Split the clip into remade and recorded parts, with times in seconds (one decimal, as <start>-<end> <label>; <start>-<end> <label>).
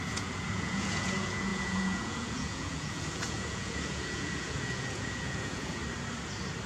0.0-5.8 remade; 5.8-6.7 recorded